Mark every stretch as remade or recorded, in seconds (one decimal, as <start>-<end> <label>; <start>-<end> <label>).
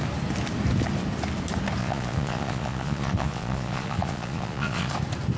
0.0-1.8 recorded; 1.8-4.9 remade; 4.9-5.4 recorded